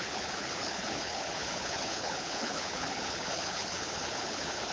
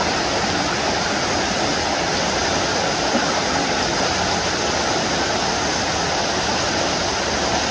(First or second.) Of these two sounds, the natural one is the second